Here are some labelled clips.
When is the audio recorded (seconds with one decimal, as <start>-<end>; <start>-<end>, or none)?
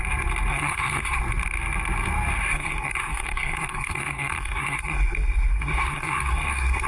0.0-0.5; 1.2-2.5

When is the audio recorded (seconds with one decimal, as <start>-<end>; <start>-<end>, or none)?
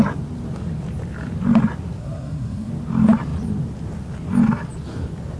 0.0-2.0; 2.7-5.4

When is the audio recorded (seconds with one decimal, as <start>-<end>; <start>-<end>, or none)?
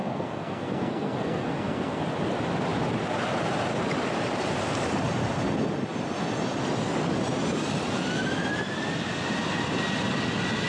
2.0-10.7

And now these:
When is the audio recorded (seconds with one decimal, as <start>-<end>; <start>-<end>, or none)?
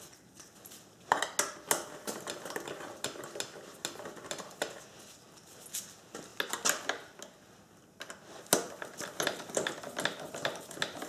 0.0-11.1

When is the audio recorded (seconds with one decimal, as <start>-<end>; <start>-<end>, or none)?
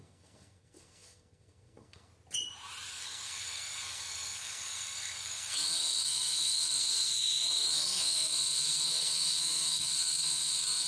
2.1-2.9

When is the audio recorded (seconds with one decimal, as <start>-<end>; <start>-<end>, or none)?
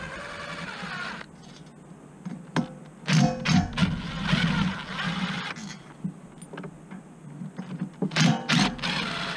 0.0-9.4